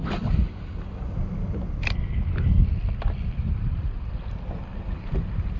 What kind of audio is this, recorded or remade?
recorded